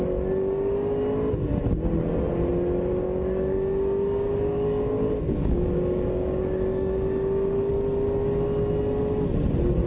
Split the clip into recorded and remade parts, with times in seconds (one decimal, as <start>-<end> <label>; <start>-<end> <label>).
0.0-2.9 recorded; 2.9-7.7 remade; 7.7-9.9 recorded